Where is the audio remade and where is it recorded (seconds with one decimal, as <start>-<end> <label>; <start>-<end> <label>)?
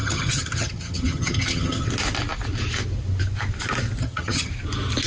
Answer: 0.0-1.9 remade; 1.9-4.0 recorded; 4.0-4.5 remade; 4.5-5.1 recorded